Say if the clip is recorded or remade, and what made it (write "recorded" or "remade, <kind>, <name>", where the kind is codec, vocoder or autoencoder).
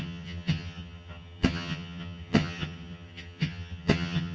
remade, vocoder, HiFi-GAN